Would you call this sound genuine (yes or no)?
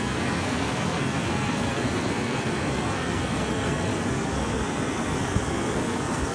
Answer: no